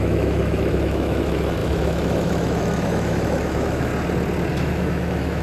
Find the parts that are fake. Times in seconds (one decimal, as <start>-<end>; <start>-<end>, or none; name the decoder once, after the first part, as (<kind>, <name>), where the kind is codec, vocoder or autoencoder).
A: 0.0-3.9 (autoencoder, DAC-VAE); 4.5-5.4